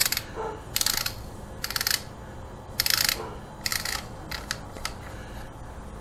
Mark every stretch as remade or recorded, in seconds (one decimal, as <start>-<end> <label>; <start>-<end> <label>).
0.0-6.0 recorded

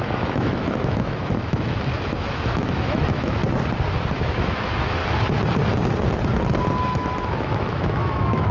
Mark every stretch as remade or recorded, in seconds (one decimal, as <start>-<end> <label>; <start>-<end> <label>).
0.0-3.4 remade; 3.4-4.1 recorded; 4.1-5.0 remade; 5.0-6.8 recorded; 6.8-8.5 remade

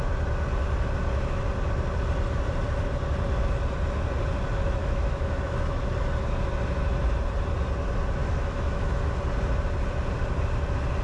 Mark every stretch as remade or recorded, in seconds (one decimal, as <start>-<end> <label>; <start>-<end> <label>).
0.0-4.8 recorded; 4.8-5.9 remade; 5.9-8.2 recorded; 8.2-9.1 remade; 9.1-11.0 recorded